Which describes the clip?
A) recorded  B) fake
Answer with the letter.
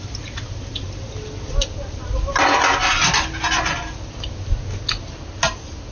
A